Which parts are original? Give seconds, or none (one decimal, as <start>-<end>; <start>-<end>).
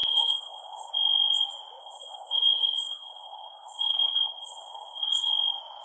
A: 0.9-1.8; 5.3-5.8